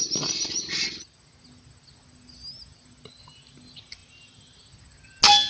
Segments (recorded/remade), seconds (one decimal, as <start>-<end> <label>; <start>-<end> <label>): 0.0-5.5 recorded